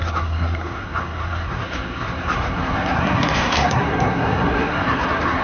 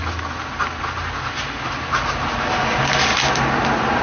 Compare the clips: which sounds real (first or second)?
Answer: second